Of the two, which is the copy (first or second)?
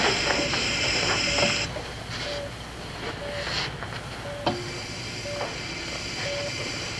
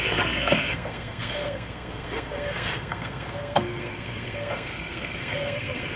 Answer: second